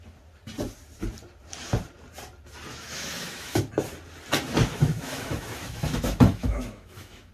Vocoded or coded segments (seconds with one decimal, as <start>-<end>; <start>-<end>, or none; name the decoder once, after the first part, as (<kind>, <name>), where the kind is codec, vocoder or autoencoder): 2.7-3.6 (autoencoder, DAC-VAE); 4.7-7.3